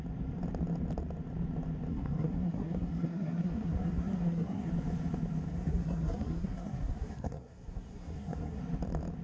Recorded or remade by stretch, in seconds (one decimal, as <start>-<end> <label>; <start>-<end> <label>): 0.0-1.9 recorded; 1.9-4.7 remade; 4.7-5.5 recorded; 5.5-8.6 remade; 8.6-9.2 recorded